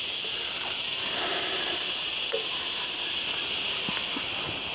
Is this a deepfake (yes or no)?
no